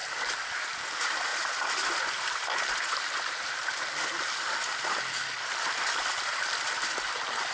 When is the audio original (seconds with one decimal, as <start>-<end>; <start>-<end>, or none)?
0.0-7.5